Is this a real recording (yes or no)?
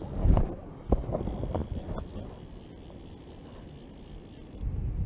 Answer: yes